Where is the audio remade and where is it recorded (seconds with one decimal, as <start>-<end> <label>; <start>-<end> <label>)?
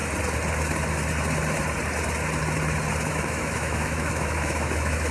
0.0-3.1 recorded; 3.1-5.1 remade